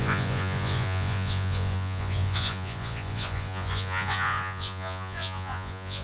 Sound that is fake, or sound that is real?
fake